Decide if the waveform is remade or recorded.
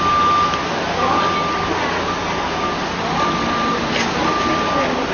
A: recorded